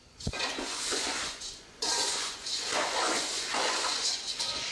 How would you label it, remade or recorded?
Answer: remade